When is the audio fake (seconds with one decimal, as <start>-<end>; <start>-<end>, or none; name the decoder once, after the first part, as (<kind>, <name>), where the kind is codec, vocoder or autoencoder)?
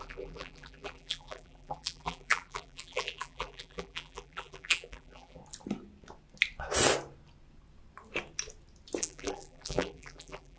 0.0-5.4 (vocoder, BigVGAN v2); 9.0-10.6